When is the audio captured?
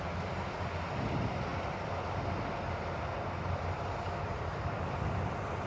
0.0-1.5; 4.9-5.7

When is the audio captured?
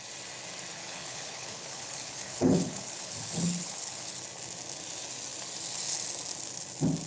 0.0-0.7; 4.2-7.1